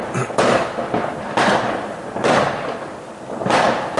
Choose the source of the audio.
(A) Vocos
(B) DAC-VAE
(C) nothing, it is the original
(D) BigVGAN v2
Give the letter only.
C